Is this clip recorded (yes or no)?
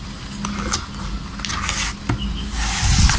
yes